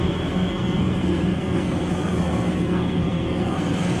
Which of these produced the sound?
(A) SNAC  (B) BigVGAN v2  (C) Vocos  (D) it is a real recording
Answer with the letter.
A